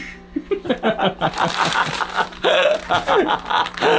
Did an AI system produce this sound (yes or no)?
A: no